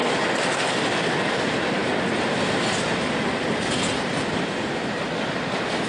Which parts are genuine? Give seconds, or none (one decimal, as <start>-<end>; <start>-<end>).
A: 0.0-5.9